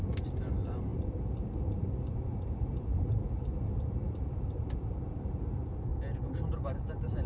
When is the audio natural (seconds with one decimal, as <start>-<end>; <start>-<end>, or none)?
5.9-6.5